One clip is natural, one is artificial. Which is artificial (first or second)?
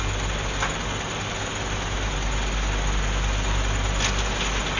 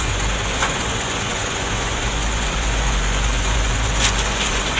second